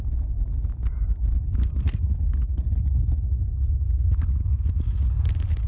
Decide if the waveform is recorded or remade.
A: recorded